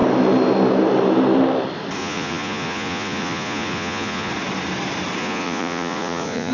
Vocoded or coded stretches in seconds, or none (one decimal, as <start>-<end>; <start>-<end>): 2.0-4.3; 5.2-6.5